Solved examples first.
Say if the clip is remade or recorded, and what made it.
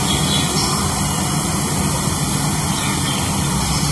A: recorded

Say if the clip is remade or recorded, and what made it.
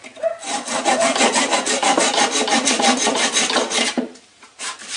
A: recorded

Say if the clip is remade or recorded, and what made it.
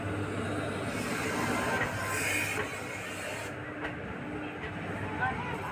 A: recorded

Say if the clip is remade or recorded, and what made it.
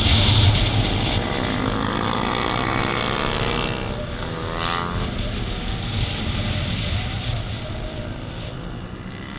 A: recorded